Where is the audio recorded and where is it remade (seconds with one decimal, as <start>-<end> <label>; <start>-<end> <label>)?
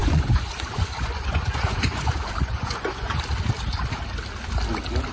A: 0.0-3.1 remade; 3.1-5.1 recorded